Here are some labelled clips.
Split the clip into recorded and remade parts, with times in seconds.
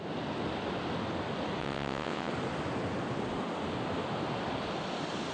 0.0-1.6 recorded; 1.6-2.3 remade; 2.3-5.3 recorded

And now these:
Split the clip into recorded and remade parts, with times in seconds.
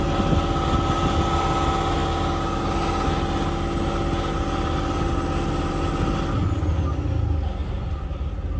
0.0-7.6 recorded; 7.6-8.1 remade; 8.1-8.6 recorded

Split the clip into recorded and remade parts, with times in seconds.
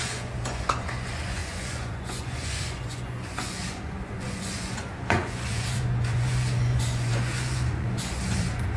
0.0-8.8 remade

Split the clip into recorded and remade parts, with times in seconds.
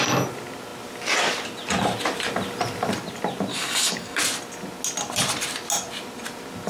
0.0-3.5 recorded; 3.5-4.2 remade; 4.2-6.7 recorded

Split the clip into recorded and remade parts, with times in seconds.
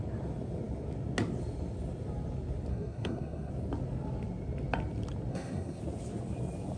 0.0-2.7 recorded; 2.7-3.5 remade; 3.5-5.3 recorded; 5.3-5.8 remade; 5.8-6.8 recorded